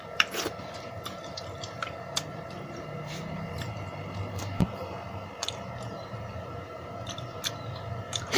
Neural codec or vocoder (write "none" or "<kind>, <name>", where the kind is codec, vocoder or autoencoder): vocoder, BigVGAN v2